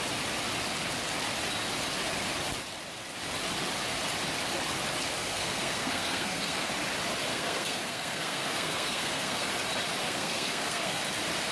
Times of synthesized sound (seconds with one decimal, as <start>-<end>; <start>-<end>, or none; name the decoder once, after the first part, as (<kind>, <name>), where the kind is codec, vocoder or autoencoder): 5.2-6.7 (codec, SNAC); 7.3-9.5; 10.0-11.0